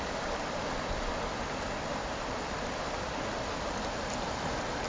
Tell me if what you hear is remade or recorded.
recorded